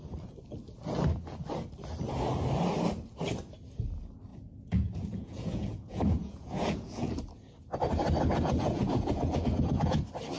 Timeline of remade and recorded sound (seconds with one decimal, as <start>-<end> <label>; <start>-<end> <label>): 0.0-4.3 recorded; 4.3-7.2 remade; 7.2-8.3 recorded; 8.3-10.0 remade; 10.0-10.4 recorded